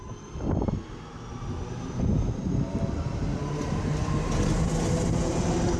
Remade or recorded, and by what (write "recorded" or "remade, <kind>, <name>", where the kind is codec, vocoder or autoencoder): recorded